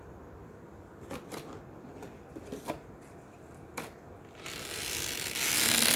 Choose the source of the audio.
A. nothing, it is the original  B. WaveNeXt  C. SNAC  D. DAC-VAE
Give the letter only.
A